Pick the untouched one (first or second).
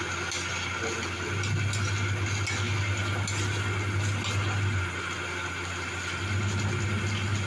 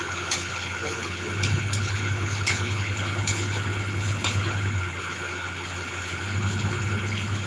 first